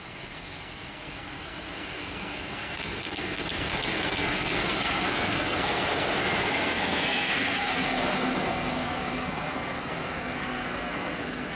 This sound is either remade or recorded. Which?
remade